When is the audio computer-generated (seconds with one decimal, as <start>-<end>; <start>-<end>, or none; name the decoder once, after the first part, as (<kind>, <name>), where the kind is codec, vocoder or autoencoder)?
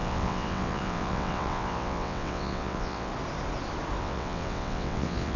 0.0-3.1 (vocoder, WaveNeXt); 4.0-5.4